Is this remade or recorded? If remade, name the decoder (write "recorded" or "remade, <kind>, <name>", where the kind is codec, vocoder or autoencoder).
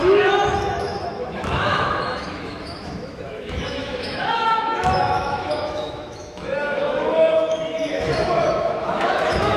remade, autoencoder, DAC-VAE